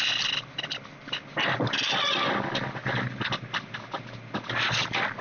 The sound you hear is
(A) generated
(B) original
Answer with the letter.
B